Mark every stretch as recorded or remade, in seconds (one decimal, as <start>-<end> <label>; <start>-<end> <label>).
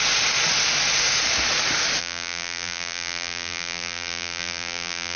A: 0.0-2.0 recorded; 2.0-5.2 remade